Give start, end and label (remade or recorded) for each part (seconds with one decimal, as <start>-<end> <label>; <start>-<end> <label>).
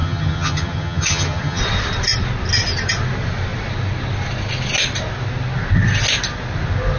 0.0-1.6 remade; 1.6-7.0 recorded